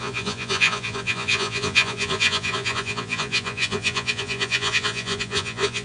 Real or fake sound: fake